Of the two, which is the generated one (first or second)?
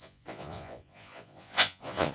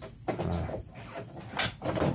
first